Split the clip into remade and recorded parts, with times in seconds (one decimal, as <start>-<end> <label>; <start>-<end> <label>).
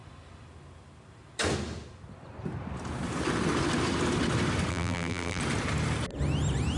0.0-4.7 recorded; 4.7-5.4 remade; 5.4-6.8 recorded